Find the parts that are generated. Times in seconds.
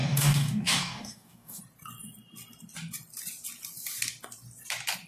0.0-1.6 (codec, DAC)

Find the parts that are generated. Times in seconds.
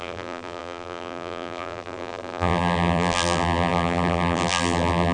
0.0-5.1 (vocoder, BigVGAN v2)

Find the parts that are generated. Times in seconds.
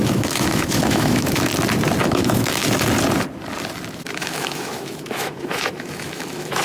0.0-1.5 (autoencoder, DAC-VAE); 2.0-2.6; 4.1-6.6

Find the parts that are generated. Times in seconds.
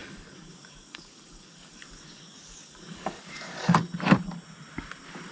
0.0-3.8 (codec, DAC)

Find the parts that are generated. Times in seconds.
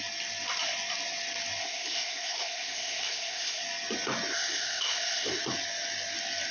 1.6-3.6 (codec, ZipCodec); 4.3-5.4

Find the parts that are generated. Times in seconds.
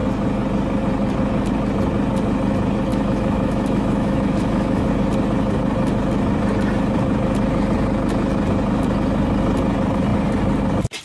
2.9-4.9 (autoencoder, DAC-VAE)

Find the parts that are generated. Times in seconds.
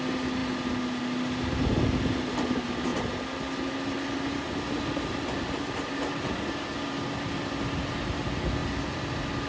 none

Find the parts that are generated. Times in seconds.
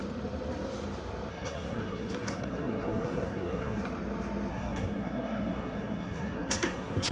1.3-3.8 (codec, SNAC); 4.5-7.1